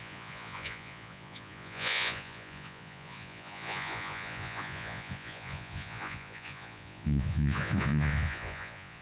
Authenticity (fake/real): fake